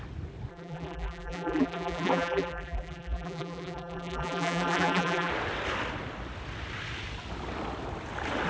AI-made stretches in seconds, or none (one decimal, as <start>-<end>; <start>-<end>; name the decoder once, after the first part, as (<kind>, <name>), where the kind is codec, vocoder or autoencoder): 0.5-5.3 (vocoder, BigVGAN v2)